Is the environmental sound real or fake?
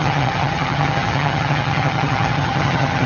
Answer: fake